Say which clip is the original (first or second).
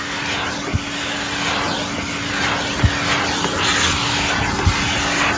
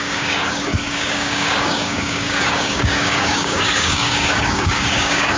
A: first